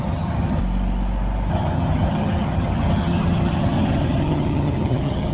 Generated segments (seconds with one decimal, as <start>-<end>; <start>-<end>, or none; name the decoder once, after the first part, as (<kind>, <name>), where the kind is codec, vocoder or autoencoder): 0.0-0.6 (vocoder, HiFi-GAN); 1.5-5.3